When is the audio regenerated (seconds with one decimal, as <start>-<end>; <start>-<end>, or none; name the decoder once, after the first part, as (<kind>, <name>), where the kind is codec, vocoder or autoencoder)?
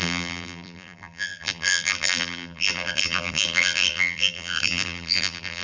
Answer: 0.0-5.6 (vocoder, BigVGAN v2)